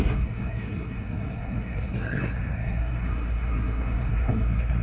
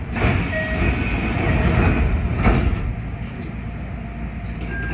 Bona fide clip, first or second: second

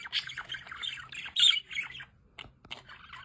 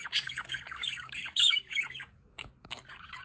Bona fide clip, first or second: first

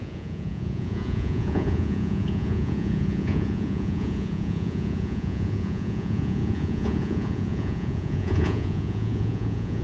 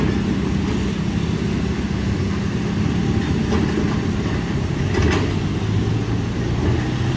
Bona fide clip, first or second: second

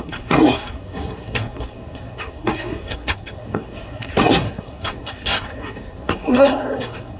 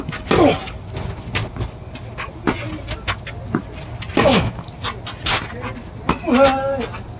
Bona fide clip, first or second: second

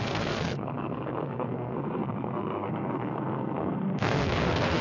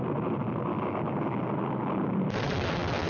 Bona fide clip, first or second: second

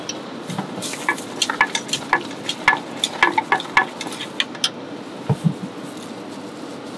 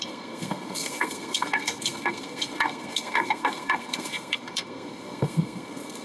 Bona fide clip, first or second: first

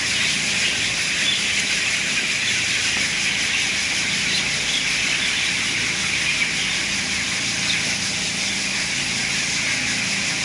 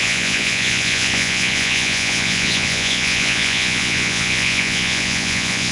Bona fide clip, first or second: first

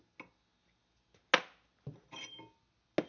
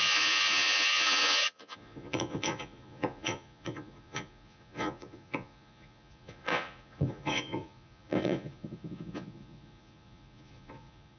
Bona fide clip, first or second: first